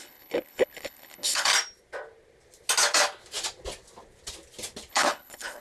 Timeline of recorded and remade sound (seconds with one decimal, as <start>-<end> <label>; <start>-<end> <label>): 0.0-1.5 remade; 1.5-4.9 recorded; 4.9-5.6 remade